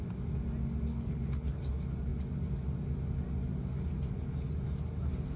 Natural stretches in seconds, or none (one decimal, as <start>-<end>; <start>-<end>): 0.0-0.9; 1.6-5.4